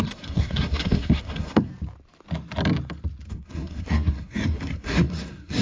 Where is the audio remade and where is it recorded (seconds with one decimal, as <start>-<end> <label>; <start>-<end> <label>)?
0.0-1.7 remade; 1.7-3.3 recorded; 3.3-5.6 remade